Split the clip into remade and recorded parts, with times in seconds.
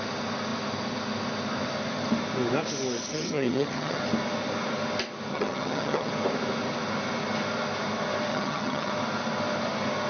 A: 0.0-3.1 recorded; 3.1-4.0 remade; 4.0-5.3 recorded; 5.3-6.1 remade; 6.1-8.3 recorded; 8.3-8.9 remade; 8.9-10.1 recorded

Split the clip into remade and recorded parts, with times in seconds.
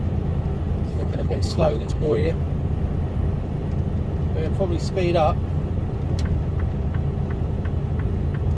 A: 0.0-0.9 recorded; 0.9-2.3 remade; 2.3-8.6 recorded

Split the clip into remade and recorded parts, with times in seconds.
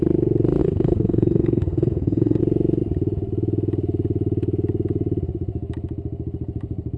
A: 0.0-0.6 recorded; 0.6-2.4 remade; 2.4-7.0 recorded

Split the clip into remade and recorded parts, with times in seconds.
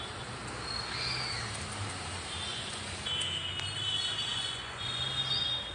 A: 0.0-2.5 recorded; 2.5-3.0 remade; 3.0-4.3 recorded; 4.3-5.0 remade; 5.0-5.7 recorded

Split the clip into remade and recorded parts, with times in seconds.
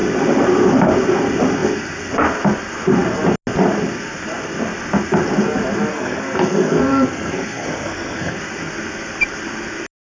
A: 0.0-5.9 recorded; 5.9-8.4 remade; 8.4-10.2 recorded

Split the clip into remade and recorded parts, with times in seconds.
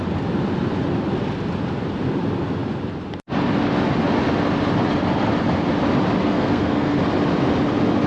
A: 0.0-6.2 recorded; 6.2-7.0 remade; 7.0-8.1 recorded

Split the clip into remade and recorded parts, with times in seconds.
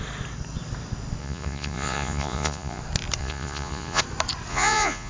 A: 0.0-1.2 recorded; 1.2-2.8 remade; 2.8-3.2 recorded; 3.2-4.0 remade; 4.0-4.5 recorded; 4.5-5.1 remade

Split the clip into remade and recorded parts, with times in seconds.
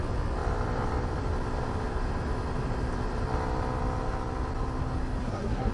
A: 0.0-5.2 recorded; 5.2-5.7 remade